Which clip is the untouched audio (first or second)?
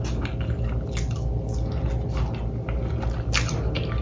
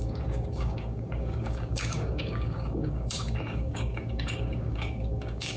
first